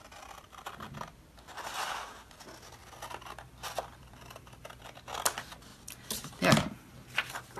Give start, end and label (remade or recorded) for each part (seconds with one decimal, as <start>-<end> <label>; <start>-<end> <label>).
0.0-2.8 recorded; 2.8-4.8 remade; 4.8-5.7 recorded; 5.7-6.4 remade; 6.4-7.6 recorded